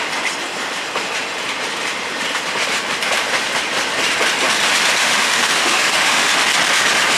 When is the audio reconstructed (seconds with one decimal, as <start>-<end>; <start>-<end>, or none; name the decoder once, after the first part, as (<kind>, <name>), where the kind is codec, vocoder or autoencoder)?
5.0-6.3 (autoencoder, DAC-VAE)